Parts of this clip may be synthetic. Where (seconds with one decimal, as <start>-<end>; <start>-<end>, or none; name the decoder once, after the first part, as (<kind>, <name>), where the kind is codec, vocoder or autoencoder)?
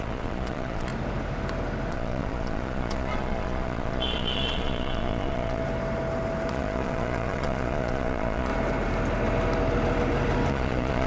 0.0-0.9 (vocoder, Vocos); 1.9-5.6; 6.5-8.5; 10.5-11.1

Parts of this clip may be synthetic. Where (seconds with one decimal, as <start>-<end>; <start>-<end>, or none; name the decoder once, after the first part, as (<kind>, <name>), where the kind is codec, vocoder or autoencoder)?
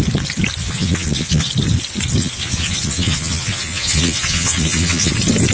0.6-1.5 (vocoder, Vocos); 2.2-5.1